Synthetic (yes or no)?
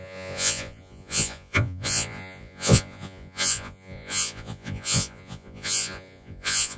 yes